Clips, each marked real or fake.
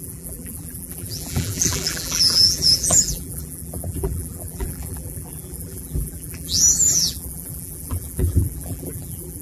fake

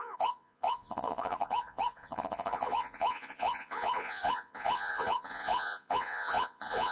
fake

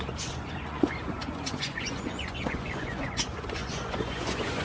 fake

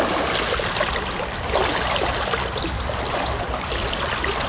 real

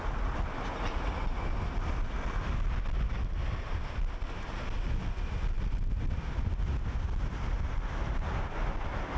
real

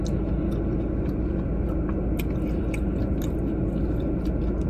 real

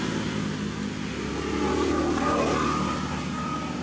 real